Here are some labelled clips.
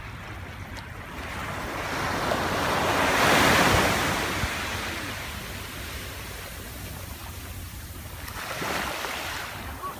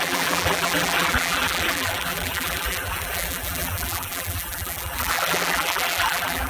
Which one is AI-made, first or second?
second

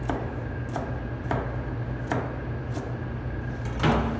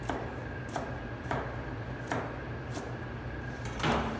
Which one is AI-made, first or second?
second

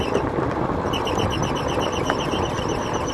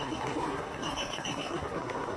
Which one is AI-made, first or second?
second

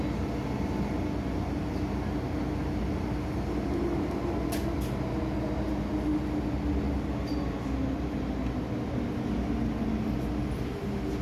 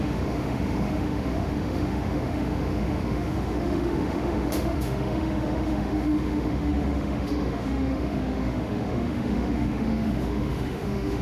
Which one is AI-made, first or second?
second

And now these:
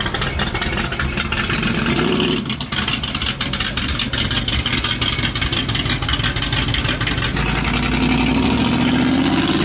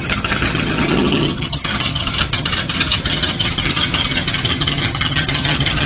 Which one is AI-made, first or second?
second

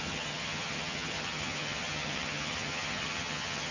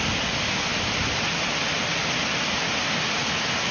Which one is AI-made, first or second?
first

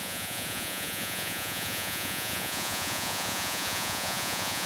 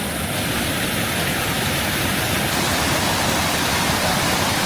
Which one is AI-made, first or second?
first